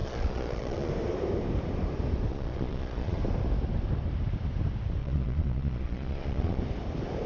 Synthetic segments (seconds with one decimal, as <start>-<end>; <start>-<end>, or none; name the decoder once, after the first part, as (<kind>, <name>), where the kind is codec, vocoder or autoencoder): 0.0-0.9 (vocoder, Vocos); 2.3-3.2; 5.0-6.6